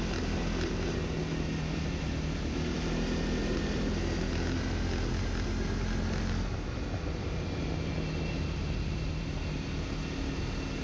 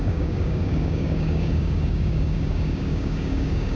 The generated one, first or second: second